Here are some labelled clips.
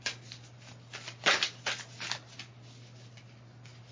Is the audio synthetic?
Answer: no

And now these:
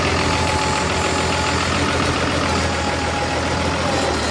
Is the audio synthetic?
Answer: no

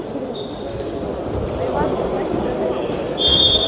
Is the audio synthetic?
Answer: yes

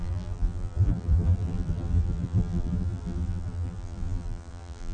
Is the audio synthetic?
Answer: yes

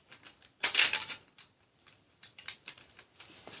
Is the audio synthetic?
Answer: yes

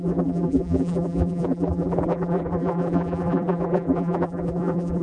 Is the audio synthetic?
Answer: yes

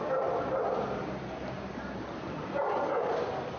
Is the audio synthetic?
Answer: yes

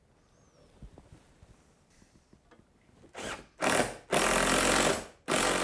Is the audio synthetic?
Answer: no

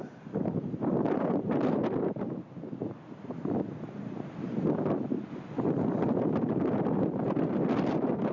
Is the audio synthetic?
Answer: no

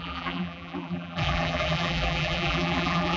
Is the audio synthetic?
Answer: yes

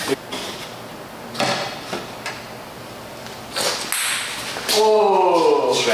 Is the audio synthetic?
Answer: no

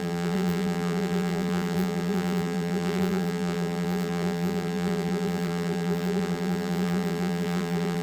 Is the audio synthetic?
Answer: yes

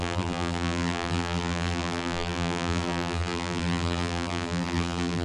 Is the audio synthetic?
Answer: yes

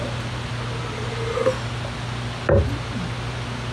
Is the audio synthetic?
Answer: no